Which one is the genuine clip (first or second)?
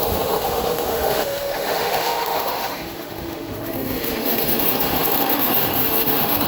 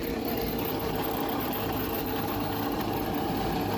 second